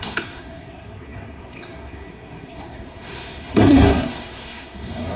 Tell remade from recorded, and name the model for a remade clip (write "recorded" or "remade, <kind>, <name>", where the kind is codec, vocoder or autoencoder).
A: remade, codec, SNAC